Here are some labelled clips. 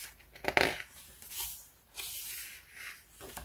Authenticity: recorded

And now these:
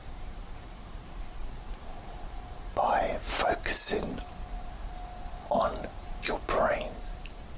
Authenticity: remade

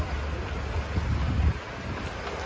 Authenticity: recorded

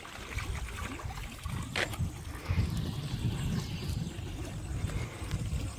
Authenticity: recorded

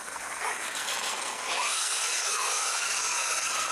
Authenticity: remade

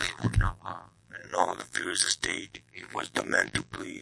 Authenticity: remade